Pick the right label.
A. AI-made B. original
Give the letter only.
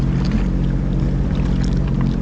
B